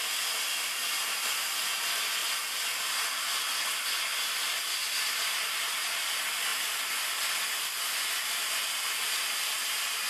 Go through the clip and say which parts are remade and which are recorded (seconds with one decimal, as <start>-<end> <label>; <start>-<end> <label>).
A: 0.0-10.1 recorded